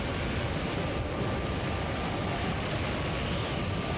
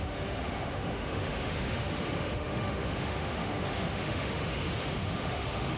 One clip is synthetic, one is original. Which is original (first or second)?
first